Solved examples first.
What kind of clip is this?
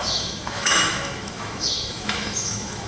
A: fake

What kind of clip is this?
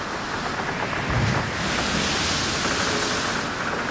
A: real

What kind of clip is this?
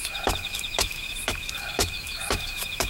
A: fake